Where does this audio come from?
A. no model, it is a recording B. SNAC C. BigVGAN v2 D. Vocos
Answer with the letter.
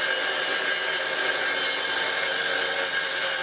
A